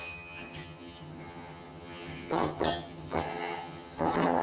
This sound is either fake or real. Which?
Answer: fake